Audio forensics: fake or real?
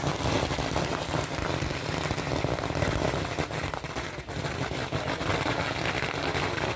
real